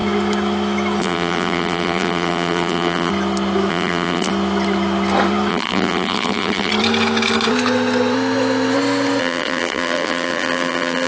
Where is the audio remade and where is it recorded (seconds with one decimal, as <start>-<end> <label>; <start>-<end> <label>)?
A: 0.0-1.0 recorded; 1.0-3.1 remade; 3.1-3.7 recorded; 3.7-4.3 remade; 4.3-5.5 recorded; 5.5-6.7 remade; 6.7-9.2 recorded; 9.2-11.1 remade